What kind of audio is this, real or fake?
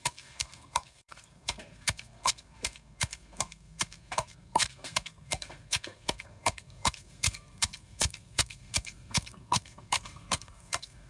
fake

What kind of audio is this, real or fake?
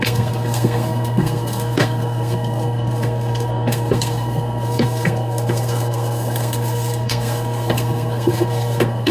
fake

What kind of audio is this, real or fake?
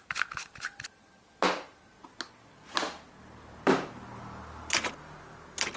real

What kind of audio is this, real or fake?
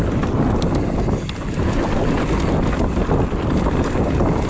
real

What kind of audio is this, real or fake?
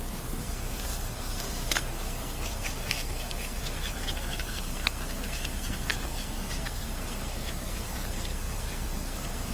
fake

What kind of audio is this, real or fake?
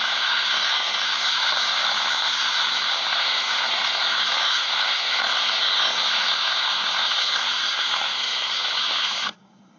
fake